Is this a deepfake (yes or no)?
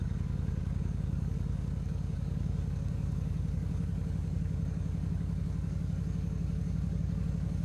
yes